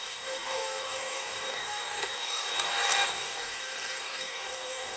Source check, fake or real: fake